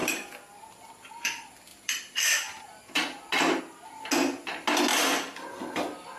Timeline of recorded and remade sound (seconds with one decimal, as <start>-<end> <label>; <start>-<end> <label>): 0.0-0.6 remade; 0.6-1.7 recorded; 1.7-3.6 remade; 3.6-4.9 recorded; 4.9-5.5 remade; 5.5-6.2 recorded